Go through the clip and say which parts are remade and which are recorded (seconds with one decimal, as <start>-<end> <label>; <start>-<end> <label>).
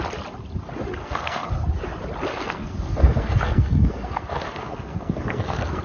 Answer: 0.0-1.0 recorded; 1.0-1.5 remade; 1.5-2.3 recorded; 2.3-5.8 remade